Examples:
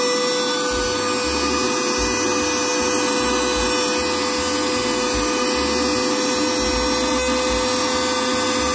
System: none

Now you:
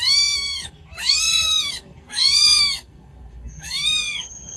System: codec, SNAC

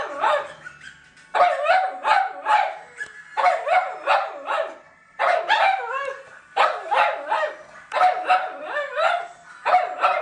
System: none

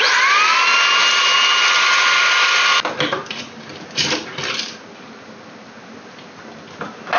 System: none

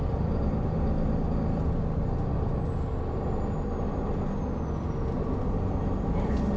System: none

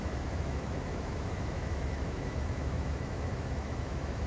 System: autoencoder, DAC-VAE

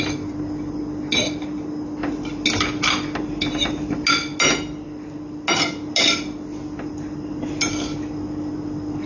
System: none